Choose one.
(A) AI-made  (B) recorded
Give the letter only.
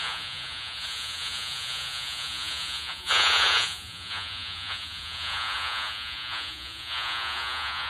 A